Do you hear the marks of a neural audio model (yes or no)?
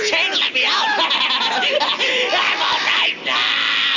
no